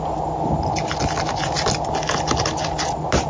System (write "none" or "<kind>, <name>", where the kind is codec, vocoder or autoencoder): none